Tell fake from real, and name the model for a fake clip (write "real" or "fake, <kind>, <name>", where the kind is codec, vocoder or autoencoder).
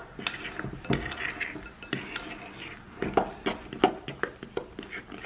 real